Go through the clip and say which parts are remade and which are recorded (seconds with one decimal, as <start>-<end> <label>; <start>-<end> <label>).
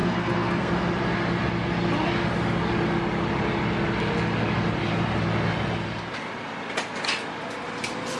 0.0-0.7 remade; 0.7-8.2 recorded